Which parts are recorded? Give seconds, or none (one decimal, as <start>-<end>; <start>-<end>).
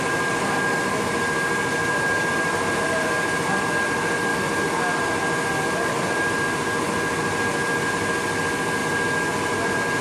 0.0-1.8; 3.7-10.0